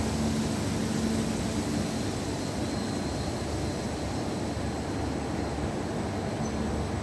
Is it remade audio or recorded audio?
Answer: recorded